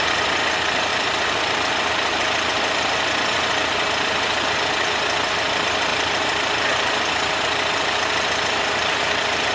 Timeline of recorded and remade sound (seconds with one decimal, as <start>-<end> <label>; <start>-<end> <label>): 0.0-0.9 recorded; 0.9-1.9 remade; 1.9-5.9 recorded; 5.9-9.5 remade